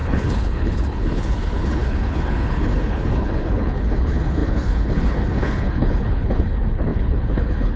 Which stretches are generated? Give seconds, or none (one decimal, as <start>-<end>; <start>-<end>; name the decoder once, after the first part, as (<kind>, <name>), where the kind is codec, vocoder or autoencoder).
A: 0.0-7.8 (codec, HILCodec)